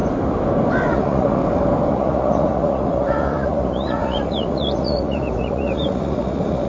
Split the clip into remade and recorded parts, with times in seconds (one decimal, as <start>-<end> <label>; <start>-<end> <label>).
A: 0.0-0.9 recorded; 0.9-1.4 remade; 1.4-1.9 recorded; 1.9-6.7 remade